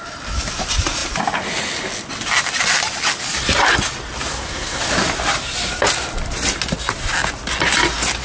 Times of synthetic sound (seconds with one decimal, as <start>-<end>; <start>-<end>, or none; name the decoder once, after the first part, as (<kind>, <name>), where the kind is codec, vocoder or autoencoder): 4.3-4.8 (codec, SNAC)